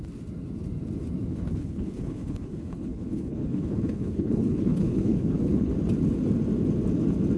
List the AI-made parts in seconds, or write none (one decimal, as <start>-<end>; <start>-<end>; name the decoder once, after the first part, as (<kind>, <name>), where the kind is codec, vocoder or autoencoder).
1.3-5.7 (codec, HILCodec)